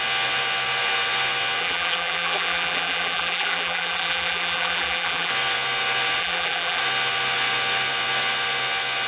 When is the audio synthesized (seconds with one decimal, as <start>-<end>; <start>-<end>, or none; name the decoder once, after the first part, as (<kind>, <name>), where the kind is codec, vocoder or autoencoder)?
1.6-5.3 (vocoder, BigVGAN v2); 6.2-6.8